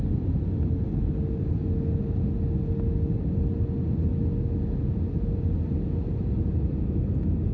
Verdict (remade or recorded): recorded